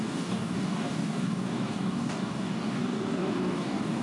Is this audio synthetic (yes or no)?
yes